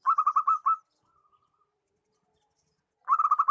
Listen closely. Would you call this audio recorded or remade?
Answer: recorded